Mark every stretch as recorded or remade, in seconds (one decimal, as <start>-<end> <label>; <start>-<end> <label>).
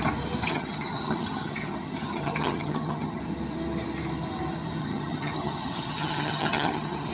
0.0-0.5 recorded; 0.5-3.2 remade; 3.2-4.8 recorded; 4.8-7.1 remade